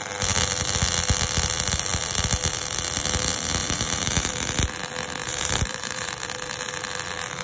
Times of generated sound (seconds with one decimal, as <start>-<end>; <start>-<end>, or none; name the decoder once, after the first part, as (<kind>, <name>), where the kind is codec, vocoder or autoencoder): 3.6-4.3 (vocoder, BigVGAN v2); 5.2-6.1